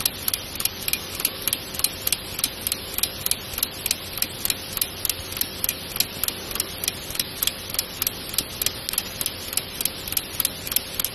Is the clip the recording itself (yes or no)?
yes